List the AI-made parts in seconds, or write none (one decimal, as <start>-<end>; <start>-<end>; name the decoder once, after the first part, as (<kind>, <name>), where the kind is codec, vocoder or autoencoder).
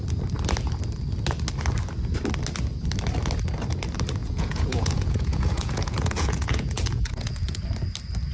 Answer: 4.2-7.6 (vocoder, Vocos)